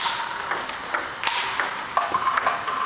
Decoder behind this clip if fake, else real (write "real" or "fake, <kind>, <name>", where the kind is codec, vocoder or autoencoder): real